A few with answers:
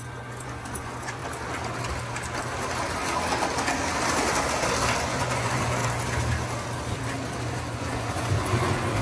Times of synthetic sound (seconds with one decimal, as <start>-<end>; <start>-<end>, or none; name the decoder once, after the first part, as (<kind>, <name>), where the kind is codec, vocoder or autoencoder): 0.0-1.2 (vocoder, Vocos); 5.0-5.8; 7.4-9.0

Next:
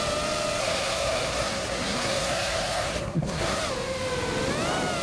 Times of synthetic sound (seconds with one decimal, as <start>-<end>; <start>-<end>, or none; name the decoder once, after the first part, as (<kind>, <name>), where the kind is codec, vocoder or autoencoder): 0.6-3.6 (codec, SNAC)

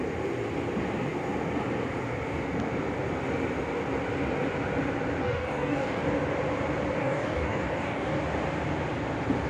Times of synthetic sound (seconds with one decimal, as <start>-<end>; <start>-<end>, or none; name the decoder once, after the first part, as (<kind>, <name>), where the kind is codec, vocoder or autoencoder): 5.2-6.0 (codec, DAC); 7.0-8.2

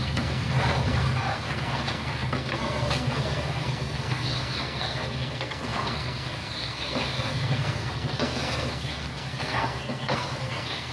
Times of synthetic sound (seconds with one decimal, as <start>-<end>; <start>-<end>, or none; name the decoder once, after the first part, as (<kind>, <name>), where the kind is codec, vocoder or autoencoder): 0.0-10.9 (codec, SNAC)

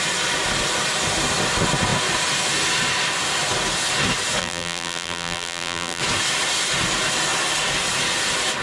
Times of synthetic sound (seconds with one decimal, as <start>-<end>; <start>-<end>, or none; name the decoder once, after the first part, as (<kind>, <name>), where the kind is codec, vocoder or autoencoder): 4.4-6.0 (vocoder, BigVGAN v2)